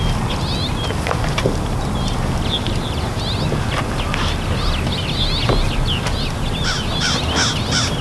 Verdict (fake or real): real